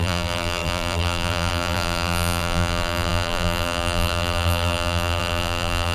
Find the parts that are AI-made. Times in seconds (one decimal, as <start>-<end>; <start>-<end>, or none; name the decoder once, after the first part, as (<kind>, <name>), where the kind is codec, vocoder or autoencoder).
0.0-5.9 (vocoder, BigVGAN v2)

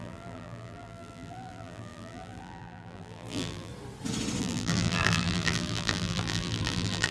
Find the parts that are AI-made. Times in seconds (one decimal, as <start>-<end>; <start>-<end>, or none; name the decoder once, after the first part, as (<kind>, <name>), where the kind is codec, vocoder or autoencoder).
0.0-3.7 (vocoder, BigVGAN v2); 4.4-7.1

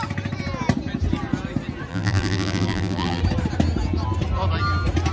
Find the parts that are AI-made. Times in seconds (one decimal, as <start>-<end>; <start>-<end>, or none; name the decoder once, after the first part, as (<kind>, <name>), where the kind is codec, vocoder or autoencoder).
1.9-3.2 (vocoder, BigVGAN v2)

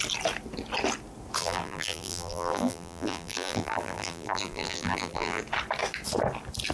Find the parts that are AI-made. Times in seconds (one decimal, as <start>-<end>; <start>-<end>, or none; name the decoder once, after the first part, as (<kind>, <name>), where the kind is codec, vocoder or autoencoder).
1.4-5.4 (vocoder, BigVGAN v2)

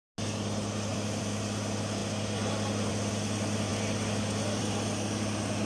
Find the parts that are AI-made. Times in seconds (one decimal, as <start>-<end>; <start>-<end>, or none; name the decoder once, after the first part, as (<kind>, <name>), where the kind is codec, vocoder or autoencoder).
0.9-1.6 (vocoder, BigVGAN v2)

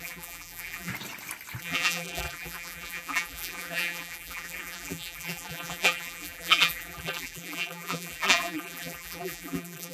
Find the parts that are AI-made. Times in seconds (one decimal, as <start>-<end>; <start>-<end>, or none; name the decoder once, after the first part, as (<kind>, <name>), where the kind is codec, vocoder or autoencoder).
0.0-0.9 (vocoder, BigVGAN v2); 1.6-9.9

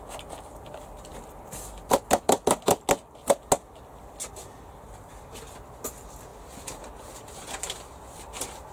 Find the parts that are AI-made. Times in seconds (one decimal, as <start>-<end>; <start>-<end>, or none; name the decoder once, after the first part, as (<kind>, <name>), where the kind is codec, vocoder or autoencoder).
1.1-2.1 (vocoder, BigVGAN v2)

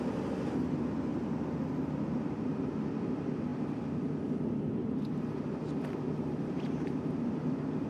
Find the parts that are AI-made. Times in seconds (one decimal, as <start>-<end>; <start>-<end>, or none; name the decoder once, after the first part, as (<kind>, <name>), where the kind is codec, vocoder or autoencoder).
none